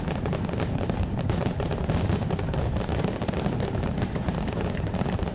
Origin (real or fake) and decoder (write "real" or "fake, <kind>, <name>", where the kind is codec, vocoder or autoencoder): fake, vocoder, BigVGAN v2